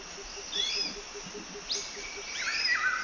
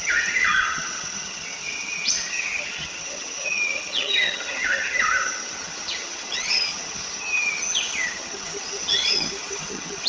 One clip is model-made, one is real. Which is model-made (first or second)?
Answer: second